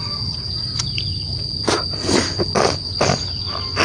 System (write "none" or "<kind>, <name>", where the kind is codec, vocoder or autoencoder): none